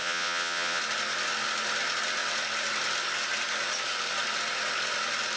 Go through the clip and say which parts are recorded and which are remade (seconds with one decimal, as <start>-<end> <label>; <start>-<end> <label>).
0.0-0.8 remade; 0.8-5.4 recorded